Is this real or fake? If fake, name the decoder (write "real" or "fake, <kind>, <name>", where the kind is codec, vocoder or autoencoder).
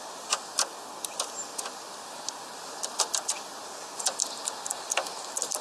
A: real